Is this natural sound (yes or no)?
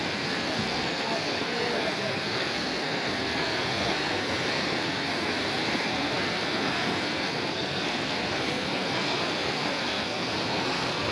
no